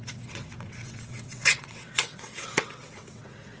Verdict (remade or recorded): remade